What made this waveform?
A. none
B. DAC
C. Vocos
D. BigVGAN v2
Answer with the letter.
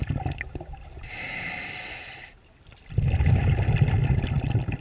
A